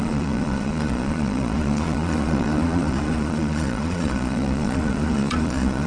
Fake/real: fake